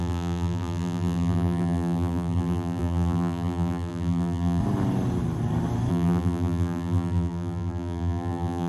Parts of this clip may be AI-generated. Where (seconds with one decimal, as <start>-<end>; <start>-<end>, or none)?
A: 0.0-4.6; 5.9-8.7